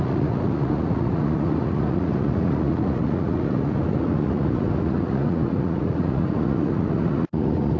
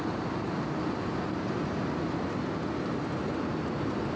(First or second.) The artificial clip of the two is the first